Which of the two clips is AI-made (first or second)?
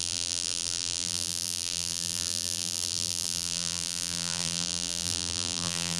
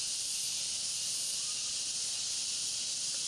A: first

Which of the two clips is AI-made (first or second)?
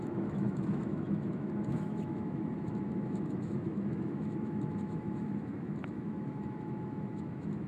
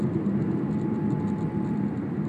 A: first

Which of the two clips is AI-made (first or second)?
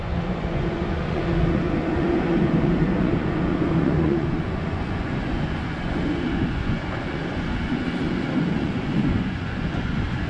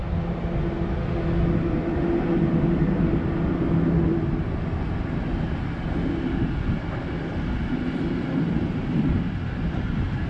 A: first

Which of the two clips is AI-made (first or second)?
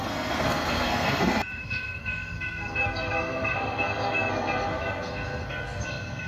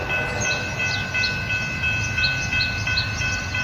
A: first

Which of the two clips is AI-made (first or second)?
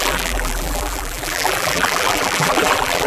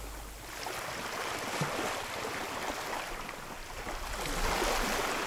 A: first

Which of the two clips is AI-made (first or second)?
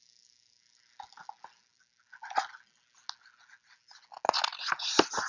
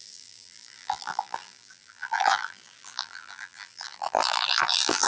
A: second